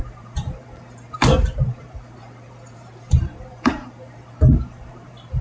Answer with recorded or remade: remade